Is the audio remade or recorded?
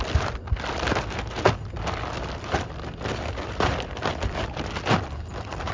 recorded